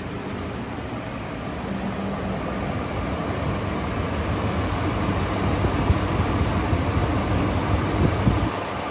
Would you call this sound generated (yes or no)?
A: no